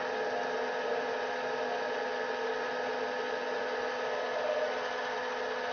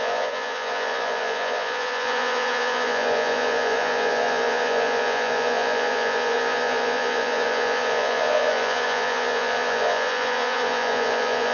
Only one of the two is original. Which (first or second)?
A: first